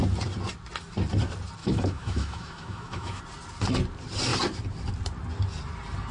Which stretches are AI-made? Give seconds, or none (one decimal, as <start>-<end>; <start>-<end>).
1.6-3.2